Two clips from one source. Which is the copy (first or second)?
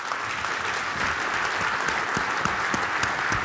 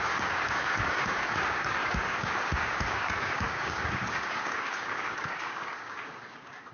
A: second